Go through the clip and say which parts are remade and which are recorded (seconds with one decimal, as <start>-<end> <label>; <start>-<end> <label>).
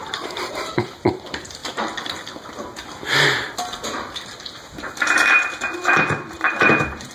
0.0-1.6 remade; 1.6-5.6 recorded; 5.6-7.1 remade